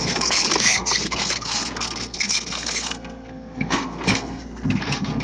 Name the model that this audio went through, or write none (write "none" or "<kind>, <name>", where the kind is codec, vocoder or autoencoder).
codec, SNAC